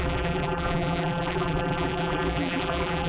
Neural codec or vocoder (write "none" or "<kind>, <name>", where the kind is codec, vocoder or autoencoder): vocoder, BigVGAN v2